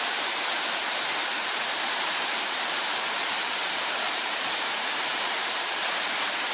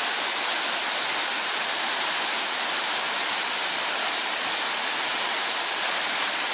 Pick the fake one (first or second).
first